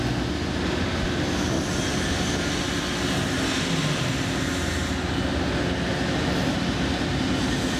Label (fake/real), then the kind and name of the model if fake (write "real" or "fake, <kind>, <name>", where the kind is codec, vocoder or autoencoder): real